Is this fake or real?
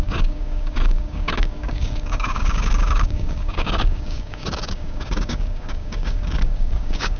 fake